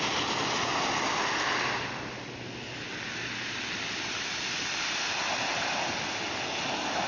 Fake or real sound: real